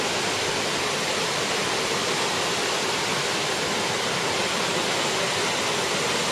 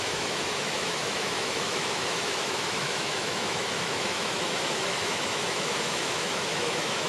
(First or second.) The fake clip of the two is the second